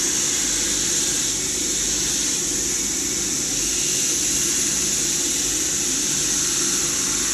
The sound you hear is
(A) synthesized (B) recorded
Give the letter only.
B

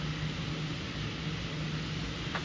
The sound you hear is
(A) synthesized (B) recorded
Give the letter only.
B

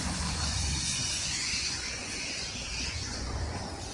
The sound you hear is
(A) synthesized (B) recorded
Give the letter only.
A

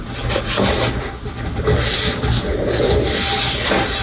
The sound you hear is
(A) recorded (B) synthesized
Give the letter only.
A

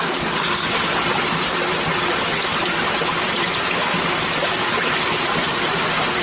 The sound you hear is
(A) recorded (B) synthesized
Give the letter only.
A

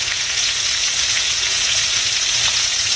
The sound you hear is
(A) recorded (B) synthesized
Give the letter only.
B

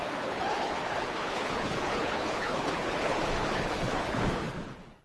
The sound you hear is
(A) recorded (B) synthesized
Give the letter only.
B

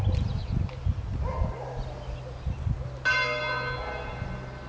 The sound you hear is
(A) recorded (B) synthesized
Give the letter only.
A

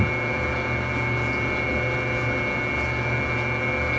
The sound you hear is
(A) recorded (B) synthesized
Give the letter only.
A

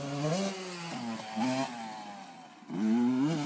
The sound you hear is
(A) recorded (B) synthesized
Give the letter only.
A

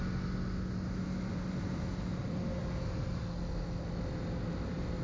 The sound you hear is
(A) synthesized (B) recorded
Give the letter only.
B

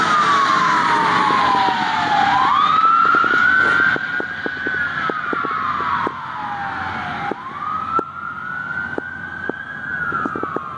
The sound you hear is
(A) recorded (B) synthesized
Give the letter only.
A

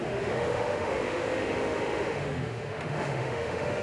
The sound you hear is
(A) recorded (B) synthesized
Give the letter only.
B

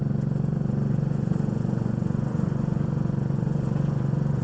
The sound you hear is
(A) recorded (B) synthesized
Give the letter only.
B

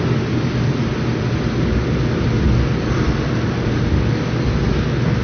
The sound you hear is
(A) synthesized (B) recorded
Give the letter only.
B